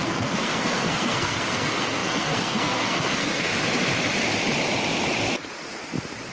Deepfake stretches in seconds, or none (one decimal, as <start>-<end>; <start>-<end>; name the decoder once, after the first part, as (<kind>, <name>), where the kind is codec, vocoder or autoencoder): 0.0-3.5 (codec, SNAC)